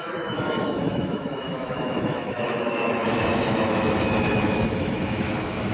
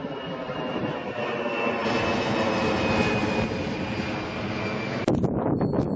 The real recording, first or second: second